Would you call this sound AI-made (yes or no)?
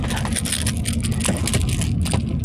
no